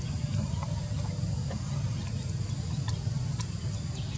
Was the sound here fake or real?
real